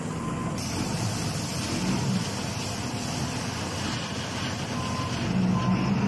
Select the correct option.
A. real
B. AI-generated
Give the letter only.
A